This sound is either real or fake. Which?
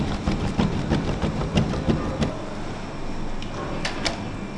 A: real